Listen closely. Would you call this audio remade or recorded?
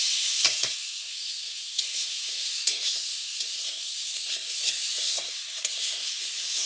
remade